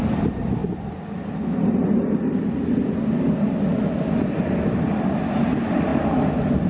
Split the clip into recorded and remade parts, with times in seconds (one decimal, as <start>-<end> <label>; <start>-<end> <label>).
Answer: 0.0-6.7 recorded